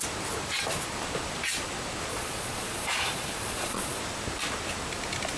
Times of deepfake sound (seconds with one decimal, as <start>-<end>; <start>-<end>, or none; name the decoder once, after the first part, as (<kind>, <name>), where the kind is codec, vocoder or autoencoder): 2.1-4.0 (vocoder, Vocos)